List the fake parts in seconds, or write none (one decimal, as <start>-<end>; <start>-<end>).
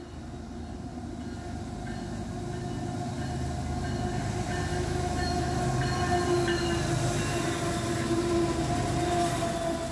4.7-5.6